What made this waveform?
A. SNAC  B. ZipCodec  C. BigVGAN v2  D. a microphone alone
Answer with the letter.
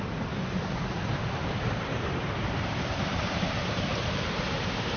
C